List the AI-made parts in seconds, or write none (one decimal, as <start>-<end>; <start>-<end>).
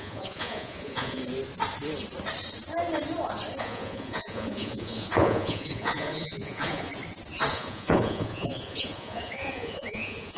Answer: 0.0-1.2; 3.6-6.9; 7.5-10.4